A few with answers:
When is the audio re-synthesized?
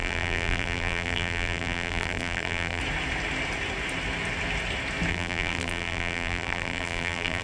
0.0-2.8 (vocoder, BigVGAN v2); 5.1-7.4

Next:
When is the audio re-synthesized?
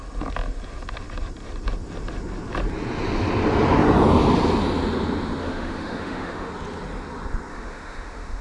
5.4-6.5 (autoencoder, DAC-VAE); 7.5-8.4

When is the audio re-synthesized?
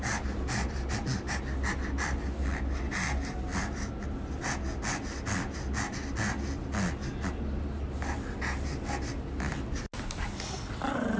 none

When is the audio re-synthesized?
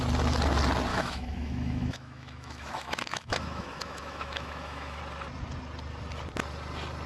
0.9-5.0 (autoencoder, DAC-VAE)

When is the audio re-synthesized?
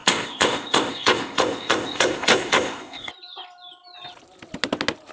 0.0-3.1 (codec, ZipCodec)